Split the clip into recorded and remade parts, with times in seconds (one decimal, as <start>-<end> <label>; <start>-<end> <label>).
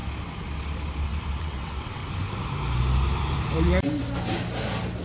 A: 0.0-1.4 recorded; 1.4-2.0 remade; 2.0-5.0 recorded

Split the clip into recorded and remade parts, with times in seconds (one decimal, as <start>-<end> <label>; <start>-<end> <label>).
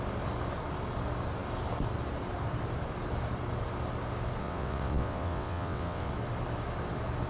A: 0.0-4.4 recorded; 4.4-6.1 remade; 6.1-7.3 recorded